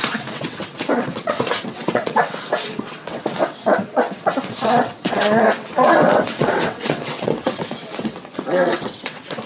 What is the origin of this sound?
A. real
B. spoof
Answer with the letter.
B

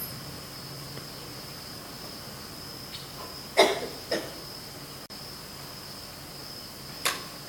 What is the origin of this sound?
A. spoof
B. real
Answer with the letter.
B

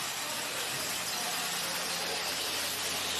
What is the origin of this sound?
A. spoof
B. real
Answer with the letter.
B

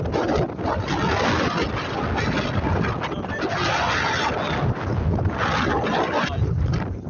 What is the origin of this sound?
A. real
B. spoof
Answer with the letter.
A